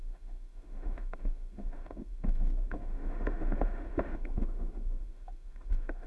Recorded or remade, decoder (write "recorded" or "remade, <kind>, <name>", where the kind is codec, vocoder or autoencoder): remade, autoencoder, DAC-VAE